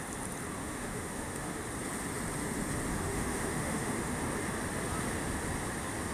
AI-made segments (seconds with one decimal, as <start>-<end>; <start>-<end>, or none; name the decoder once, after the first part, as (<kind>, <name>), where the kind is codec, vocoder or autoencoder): 0.6-1.6 (autoencoder, DAC-VAE); 2.9-4.2